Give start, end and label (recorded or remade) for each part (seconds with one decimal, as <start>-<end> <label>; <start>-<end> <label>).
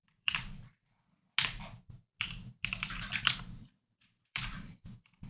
0.0-0.4 remade; 0.4-3.6 recorded; 3.6-5.3 remade